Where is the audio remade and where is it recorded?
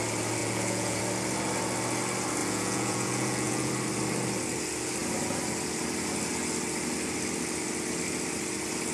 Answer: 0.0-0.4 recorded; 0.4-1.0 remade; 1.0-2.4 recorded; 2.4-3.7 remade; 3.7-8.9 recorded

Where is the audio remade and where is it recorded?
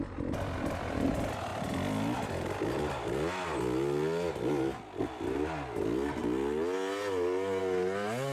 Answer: 0.0-8.3 recorded